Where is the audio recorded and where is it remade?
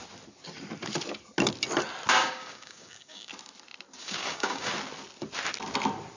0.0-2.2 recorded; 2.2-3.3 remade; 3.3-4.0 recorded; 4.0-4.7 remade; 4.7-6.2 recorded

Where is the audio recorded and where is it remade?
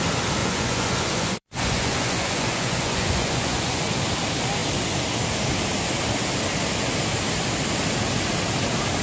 0.0-0.4 recorded; 0.4-3.8 remade; 3.8-9.0 recorded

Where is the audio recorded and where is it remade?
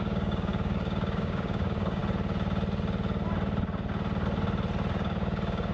0.0-2.0 remade; 2.0-4.9 recorded; 4.9-5.7 remade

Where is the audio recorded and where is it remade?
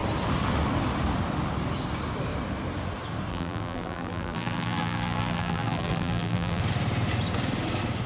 0.0-3.3 recorded; 3.3-6.6 remade; 6.6-8.1 recorded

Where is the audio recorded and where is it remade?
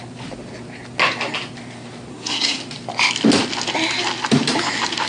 0.0-2.1 recorded; 2.1-2.6 remade; 2.6-5.1 recorded